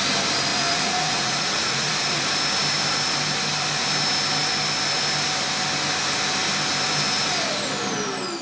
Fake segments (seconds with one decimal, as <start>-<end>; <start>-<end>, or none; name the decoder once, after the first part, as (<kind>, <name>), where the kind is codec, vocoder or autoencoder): 0.5-2.2 (vocoder, Vocos)